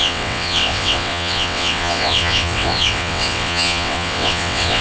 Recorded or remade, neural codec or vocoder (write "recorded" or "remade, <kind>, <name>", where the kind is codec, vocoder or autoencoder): remade, vocoder, WaveNeXt